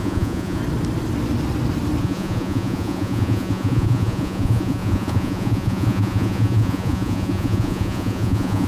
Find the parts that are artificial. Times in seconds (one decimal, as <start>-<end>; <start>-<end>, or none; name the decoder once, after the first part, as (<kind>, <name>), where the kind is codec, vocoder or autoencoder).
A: 0.0-0.6 (vocoder, Vocos); 2.0-8.7